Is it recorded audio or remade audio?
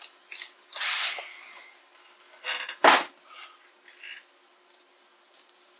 recorded